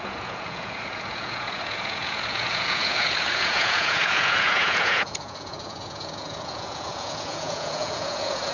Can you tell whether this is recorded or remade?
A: remade